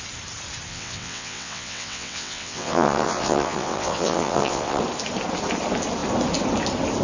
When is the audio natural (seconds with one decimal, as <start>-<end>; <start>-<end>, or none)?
0.0-0.7; 4.8-7.0